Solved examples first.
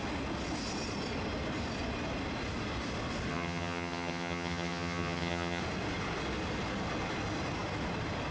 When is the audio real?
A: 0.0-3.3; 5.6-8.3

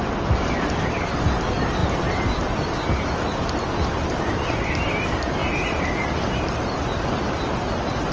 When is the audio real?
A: 0.0-8.1

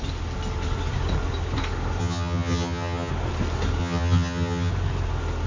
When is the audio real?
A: 0.0-2.0; 3.1-3.8; 4.7-5.5

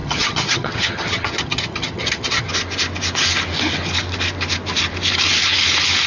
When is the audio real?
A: 2.5-6.1

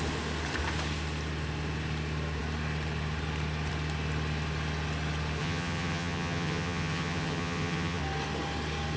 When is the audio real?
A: 0.0-5.4; 8.0-9.0

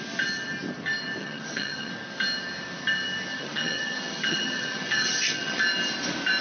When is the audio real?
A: 0.0-1.2; 1.9-3.3; 5.6-6.4

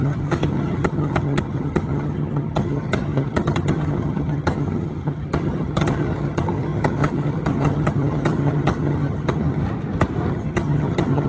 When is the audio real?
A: 9.6-10.3

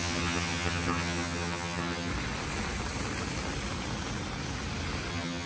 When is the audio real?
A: 2.1-5.1